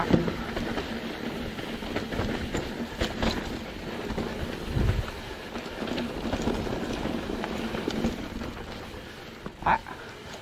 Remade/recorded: recorded